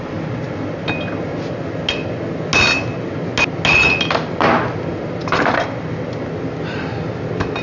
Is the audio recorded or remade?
recorded